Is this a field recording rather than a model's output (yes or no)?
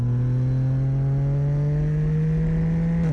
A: yes